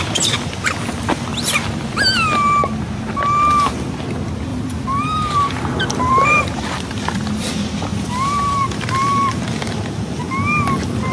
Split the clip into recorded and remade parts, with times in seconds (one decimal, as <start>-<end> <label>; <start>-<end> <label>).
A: 0.0-1.3 recorded; 1.3-1.9 remade; 1.9-4.5 recorded; 4.5-7.5 remade; 7.5-7.9 recorded; 7.9-9.4 remade; 9.4-11.1 recorded